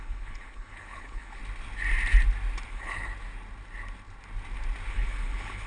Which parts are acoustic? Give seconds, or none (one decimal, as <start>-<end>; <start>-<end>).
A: 1.4-2.7; 3.1-4.9